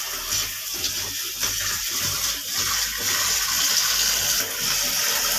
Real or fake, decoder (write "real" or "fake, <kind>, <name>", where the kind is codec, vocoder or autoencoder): real